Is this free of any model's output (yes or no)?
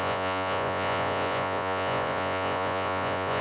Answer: no